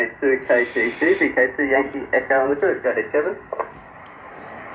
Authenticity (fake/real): real